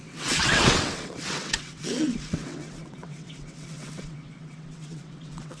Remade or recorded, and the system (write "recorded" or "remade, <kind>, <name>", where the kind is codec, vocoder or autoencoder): remade, vocoder, WaveNeXt